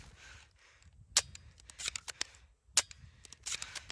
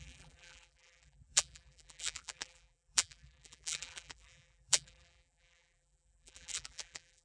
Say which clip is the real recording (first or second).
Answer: first